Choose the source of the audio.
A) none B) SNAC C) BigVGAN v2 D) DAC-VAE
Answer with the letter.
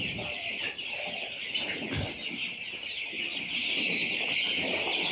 C